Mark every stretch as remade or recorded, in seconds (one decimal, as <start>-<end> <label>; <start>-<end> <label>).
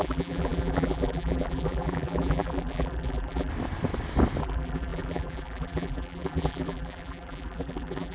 0.0-3.5 remade; 3.5-4.4 recorded; 4.4-8.1 remade